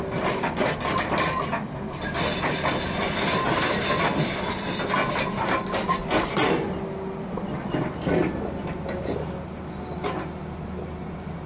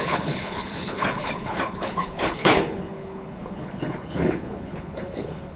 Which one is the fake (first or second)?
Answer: second